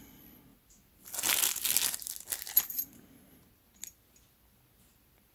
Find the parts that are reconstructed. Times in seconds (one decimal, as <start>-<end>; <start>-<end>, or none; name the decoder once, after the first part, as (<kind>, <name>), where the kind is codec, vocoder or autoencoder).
none